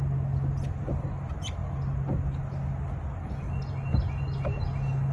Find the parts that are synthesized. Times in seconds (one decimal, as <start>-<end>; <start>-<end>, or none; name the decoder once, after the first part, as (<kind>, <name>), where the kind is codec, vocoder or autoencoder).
none